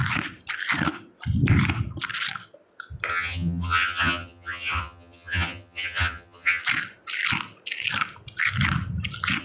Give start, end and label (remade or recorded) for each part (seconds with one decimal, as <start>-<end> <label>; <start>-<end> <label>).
0.0-3.1 recorded; 3.1-6.6 remade; 6.6-9.4 recorded